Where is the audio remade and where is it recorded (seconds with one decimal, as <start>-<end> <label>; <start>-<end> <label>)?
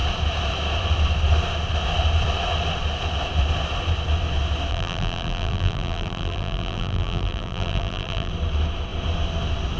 0.0-4.7 recorded; 4.7-8.3 remade; 8.3-9.8 recorded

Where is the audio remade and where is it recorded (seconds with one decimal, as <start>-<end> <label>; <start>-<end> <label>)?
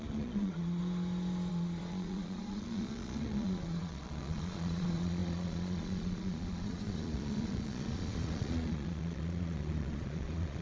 0.0-0.8 remade; 0.8-1.5 recorded; 1.5-10.6 remade